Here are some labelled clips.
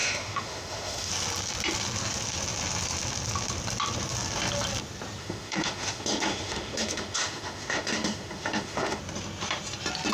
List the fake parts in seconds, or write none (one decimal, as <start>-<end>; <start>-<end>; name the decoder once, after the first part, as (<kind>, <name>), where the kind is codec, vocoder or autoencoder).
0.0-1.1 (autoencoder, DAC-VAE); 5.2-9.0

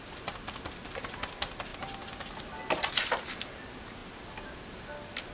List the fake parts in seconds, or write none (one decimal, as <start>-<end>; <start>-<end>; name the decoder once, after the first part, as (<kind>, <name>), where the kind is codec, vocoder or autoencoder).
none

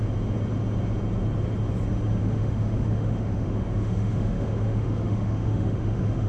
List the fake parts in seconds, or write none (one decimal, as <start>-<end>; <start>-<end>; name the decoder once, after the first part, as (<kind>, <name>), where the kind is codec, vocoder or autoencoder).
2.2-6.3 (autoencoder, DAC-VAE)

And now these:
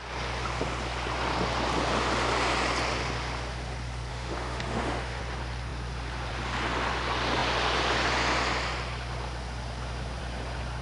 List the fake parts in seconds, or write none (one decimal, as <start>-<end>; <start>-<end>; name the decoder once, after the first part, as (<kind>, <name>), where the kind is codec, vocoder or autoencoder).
4.1-5.2 (autoencoder, DAC-VAE)

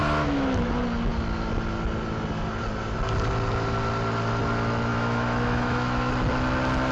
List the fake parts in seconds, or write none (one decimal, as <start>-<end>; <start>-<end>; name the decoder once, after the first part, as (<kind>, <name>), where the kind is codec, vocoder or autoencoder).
0.0-0.7 (autoencoder, DAC-VAE); 4.9-6.1

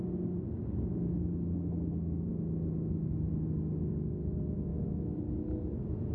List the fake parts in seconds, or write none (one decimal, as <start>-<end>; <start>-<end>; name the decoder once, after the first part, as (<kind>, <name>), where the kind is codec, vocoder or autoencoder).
0.9-1.9 (autoencoder, DAC-VAE); 4.7-5.2

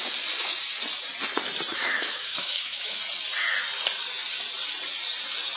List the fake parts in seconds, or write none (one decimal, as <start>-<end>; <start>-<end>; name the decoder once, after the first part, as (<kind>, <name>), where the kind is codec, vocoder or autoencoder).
1.7-3.0 (autoencoder, DAC-VAE)

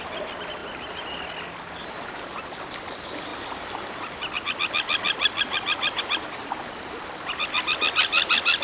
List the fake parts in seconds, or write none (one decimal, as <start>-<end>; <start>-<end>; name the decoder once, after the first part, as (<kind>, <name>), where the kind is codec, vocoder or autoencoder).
none